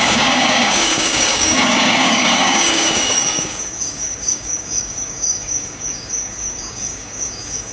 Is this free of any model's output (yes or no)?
no